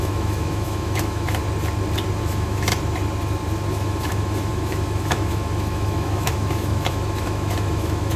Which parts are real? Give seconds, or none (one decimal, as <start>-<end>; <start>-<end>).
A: 1.4-2.2; 2.7-3.7